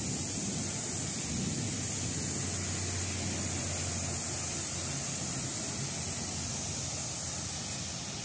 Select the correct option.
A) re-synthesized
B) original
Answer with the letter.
B